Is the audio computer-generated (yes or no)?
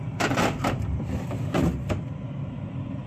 yes